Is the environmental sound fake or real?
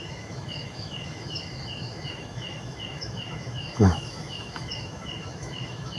fake